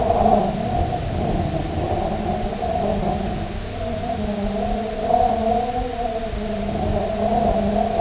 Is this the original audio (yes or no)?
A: yes